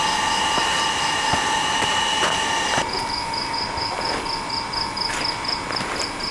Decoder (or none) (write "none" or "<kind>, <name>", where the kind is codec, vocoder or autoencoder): none